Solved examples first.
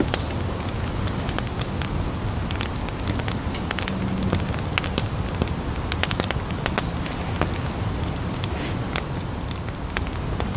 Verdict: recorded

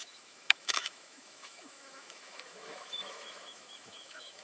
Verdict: remade